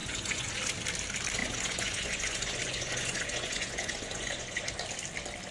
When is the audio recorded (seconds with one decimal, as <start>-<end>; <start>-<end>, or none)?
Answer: 0.6-1.4; 4.7-5.5